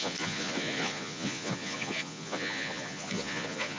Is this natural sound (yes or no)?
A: no